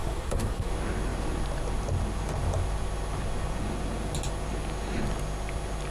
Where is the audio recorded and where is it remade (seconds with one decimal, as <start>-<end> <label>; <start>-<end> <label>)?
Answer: 0.0-0.7 remade; 0.7-5.9 recorded